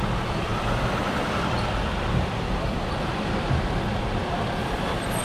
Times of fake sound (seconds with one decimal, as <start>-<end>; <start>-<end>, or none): 0.5-3.6; 4.2-5.2